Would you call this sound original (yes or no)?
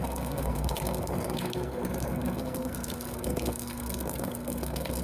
no